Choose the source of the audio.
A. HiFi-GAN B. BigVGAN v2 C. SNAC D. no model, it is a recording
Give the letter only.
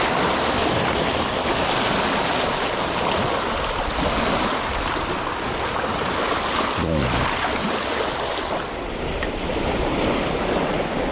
D